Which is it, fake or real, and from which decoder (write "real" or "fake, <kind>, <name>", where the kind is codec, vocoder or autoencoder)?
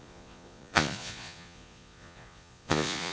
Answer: fake, vocoder, Vocos